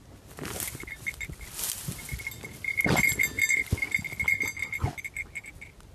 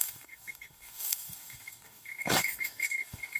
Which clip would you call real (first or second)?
first